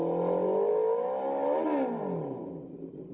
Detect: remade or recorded recorded